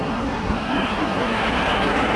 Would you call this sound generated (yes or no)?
yes